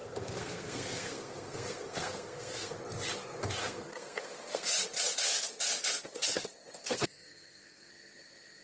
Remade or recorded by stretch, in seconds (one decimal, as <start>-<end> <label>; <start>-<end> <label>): 0.0-2.8 remade; 2.8-3.6 recorded; 3.6-4.7 remade; 4.7-6.8 recorded; 6.8-7.9 remade; 7.9-8.6 recorded